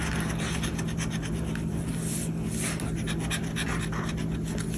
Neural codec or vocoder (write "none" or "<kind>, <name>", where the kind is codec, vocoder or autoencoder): none